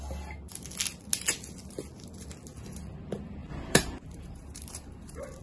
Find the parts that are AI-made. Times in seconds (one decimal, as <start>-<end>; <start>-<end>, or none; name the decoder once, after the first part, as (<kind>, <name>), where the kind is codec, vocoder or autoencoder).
3.4-5.4 (vocoder, BigVGAN v2)